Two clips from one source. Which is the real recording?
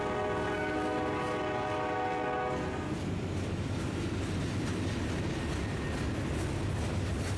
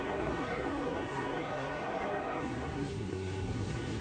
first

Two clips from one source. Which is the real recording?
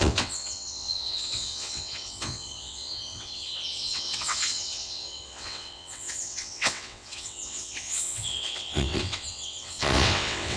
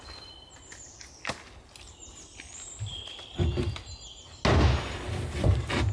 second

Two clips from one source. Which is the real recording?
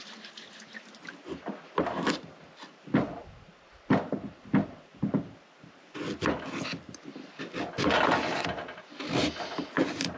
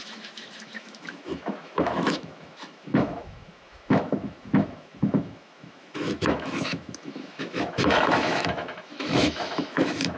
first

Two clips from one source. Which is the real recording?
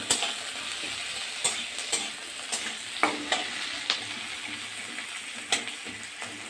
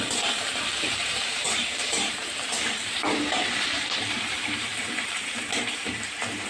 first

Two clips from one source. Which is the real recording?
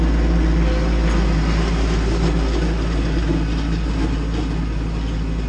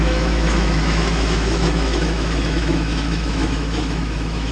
first